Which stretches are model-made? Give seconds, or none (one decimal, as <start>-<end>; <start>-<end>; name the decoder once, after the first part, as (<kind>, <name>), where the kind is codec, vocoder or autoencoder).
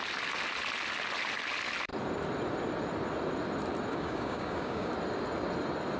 3.9-4.9 (codec, DAC)